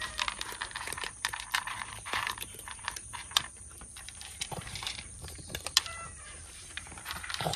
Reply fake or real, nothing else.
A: fake